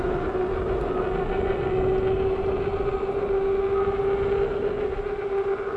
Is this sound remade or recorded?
recorded